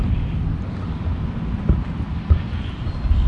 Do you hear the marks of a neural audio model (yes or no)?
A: no